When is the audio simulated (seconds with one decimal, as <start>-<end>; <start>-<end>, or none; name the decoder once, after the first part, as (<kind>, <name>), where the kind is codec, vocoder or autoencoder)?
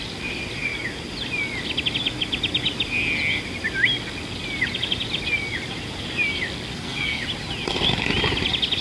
6.7-7.2 (codec, SNAC)